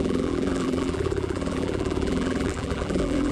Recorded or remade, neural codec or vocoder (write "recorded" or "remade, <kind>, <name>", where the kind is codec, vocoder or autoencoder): remade, vocoder, BigVGAN v2